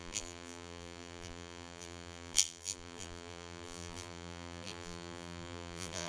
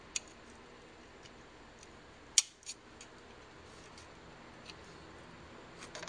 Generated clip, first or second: first